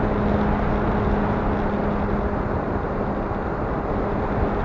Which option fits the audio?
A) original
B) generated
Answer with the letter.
A